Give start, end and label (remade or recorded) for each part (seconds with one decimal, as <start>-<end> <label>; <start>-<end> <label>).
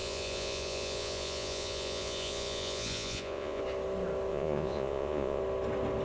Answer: 0.0-3.6 remade; 3.6-4.3 recorded; 4.3-5.4 remade; 5.4-6.0 recorded